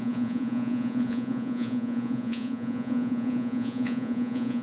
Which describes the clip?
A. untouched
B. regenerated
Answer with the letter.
B